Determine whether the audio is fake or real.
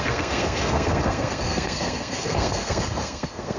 fake